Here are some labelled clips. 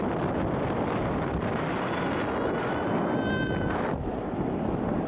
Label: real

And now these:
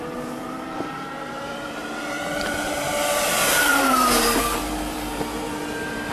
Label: fake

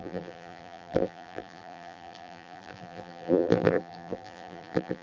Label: fake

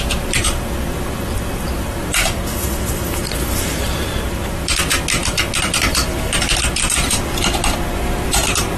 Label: fake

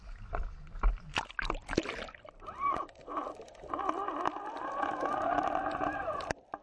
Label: fake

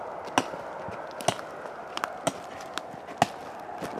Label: real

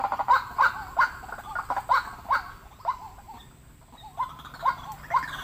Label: real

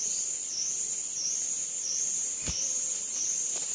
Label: fake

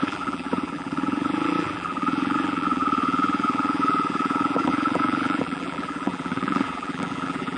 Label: fake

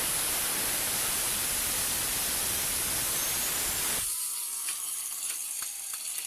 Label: fake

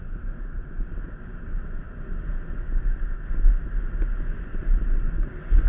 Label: real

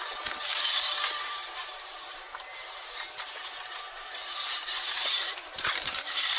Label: fake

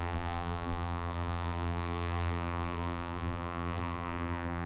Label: fake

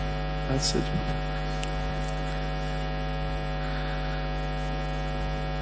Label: real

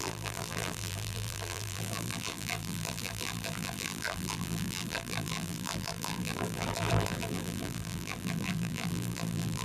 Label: fake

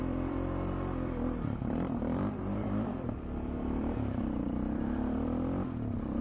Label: fake